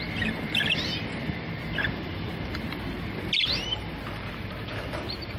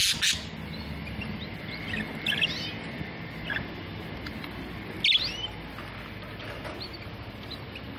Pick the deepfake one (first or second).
first